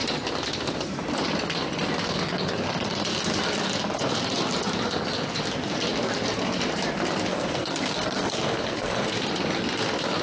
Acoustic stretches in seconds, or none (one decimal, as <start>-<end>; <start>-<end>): 0.0-7.3; 9.1-10.2